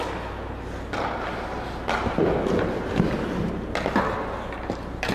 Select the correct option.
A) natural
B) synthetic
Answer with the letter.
A